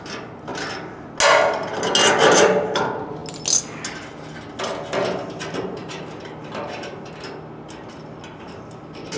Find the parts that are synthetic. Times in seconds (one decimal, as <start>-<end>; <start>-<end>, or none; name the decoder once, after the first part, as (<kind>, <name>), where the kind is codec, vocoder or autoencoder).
2.2-2.8 (vocoder, BigVGAN v2); 5.8-7.1